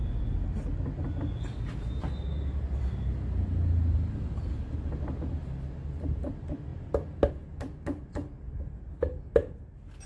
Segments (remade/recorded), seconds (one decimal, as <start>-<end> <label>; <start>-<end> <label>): 0.0-10.1 recorded